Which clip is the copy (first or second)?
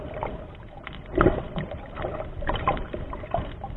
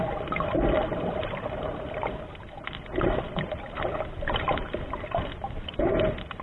first